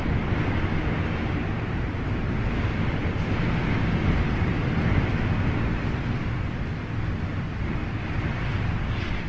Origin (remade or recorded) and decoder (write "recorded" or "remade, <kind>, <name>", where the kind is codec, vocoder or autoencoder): recorded